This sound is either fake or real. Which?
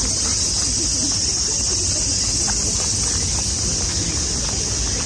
real